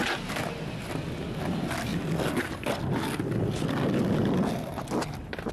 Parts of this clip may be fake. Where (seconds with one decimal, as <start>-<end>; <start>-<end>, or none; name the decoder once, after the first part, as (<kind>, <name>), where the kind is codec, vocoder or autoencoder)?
none